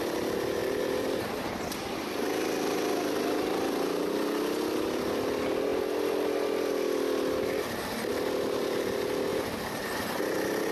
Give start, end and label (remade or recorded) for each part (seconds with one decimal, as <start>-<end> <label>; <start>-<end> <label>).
0.0-0.6 recorded; 0.6-1.2 remade; 1.2-9.3 recorded; 9.3-10.2 remade; 10.2-10.7 recorded